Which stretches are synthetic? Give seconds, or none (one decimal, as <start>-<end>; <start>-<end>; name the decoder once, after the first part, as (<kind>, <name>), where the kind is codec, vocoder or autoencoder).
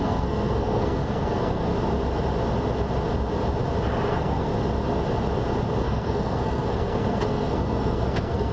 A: 0.0-1.7 (codec, SNAC); 4.1-4.5; 5.8-8.5